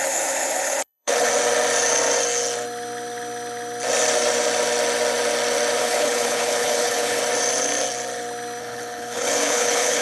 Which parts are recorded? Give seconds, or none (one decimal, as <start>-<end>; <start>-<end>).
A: 1.3-5.8; 7.2-8.6